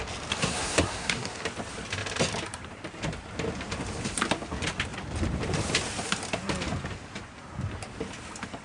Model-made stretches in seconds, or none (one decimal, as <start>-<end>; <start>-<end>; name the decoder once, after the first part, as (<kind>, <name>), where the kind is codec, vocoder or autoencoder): 0.4-1.4 (codec, SNAC)